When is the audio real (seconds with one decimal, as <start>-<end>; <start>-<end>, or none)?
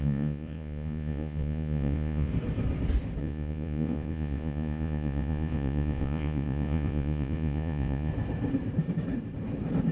2.3-3.2; 8.1-9.9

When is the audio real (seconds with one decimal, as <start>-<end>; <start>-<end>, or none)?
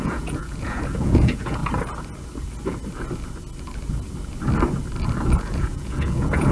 1.6-5.4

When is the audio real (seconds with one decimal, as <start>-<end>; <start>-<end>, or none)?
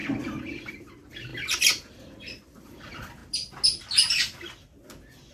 1.3-2.6; 3.2-5.3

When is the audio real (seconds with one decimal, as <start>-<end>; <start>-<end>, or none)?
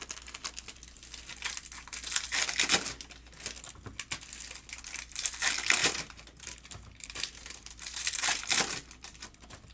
0.0-5.8; 8.6-9.7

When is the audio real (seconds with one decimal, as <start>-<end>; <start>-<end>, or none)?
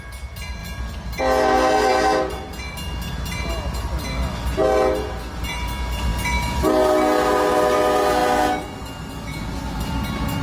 0.0-10.4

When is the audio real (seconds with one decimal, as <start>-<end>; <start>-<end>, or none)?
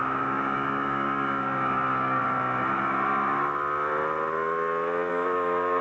2.2-5.1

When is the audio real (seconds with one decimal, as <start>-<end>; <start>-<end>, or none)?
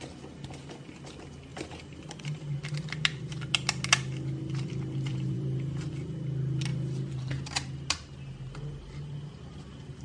0.0-1.5; 2.5-5.1; 5.9-10.0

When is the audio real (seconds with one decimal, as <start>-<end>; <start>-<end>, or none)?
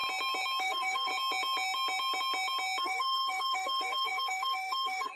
0.0-0.6; 1.1-2.8